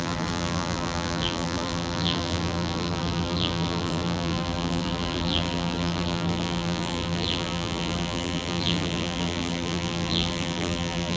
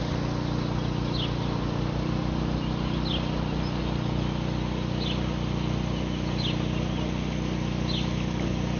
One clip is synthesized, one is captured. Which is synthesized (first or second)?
first